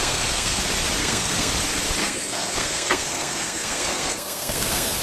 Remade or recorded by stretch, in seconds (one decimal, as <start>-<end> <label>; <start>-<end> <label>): 0.0-0.6 remade; 0.6-1.0 recorded; 1.0-1.5 remade; 1.5-2.0 recorded; 2.0-5.0 remade